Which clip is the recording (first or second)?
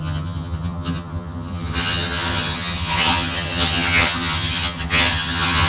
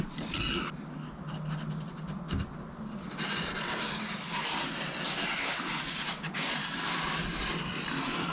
second